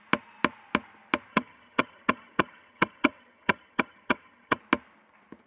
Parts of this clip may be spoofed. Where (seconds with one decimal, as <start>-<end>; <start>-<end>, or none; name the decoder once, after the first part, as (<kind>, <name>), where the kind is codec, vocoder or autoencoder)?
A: 1.3-4.6 (vocoder, HiFi-GAN)